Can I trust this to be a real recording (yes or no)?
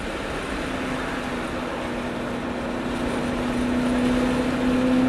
yes